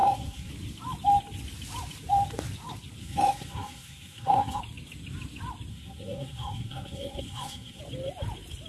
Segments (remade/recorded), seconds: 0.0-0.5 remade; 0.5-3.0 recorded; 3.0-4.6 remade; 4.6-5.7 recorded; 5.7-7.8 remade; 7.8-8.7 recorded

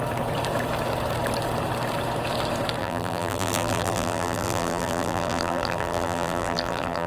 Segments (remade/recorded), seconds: 0.0-2.8 recorded; 2.8-7.1 remade